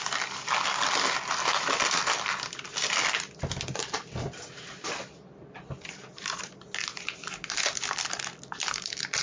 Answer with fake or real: real